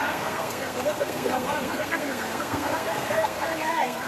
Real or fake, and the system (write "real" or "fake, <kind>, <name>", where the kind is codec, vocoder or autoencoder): fake, codec, SNAC